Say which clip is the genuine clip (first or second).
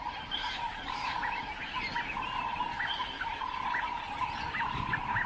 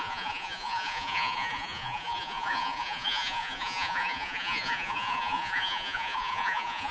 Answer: first